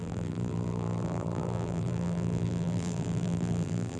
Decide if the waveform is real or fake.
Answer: fake